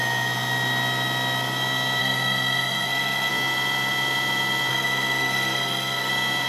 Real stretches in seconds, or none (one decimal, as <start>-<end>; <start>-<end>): 0.0-2.0; 3.3-4.7; 6.1-6.5